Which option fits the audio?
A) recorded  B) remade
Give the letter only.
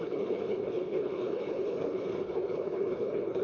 B